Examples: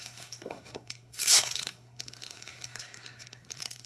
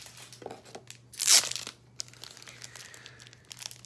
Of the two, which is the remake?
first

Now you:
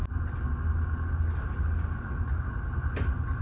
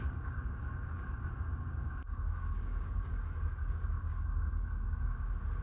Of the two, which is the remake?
second